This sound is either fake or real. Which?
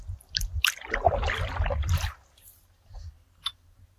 real